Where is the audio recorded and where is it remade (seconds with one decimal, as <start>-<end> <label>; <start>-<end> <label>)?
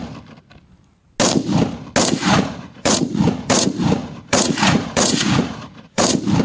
0.0-2.2 recorded; 2.2-6.0 remade; 6.0-6.4 recorded